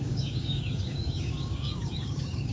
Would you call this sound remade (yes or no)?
yes